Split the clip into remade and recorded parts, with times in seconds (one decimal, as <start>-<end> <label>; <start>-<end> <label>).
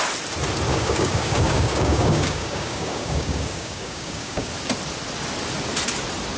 0.0-0.7 recorded; 0.7-4.5 remade; 4.5-6.4 recorded